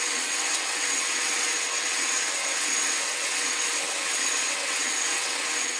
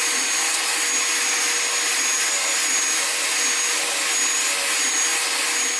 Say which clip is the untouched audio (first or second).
second